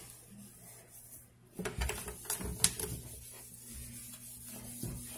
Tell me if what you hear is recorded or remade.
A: recorded